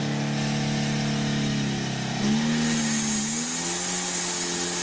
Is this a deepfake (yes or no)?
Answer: no